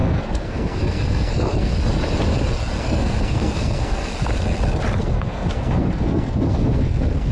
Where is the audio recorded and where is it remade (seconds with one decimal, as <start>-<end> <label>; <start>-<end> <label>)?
0.0-1.7 remade; 1.7-2.8 recorded; 2.8-4.1 remade; 4.1-5.0 recorded; 5.0-7.3 remade